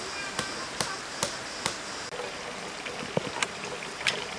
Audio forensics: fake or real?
real